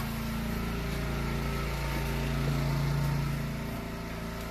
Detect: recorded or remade recorded